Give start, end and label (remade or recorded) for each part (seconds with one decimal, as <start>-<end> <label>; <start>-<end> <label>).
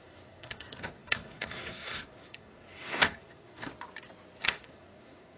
0.0-3.7 remade; 3.7-4.5 recorded; 4.5-5.4 remade